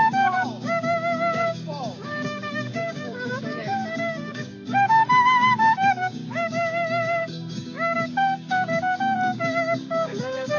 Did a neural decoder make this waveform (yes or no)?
yes